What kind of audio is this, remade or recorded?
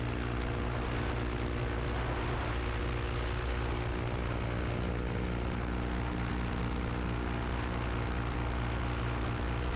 recorded